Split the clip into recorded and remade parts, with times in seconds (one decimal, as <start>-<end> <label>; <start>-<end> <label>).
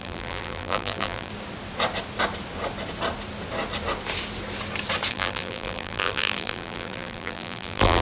0.0-1.3 remade; 1.3-5.1 recorded; 5.1-8.0 remade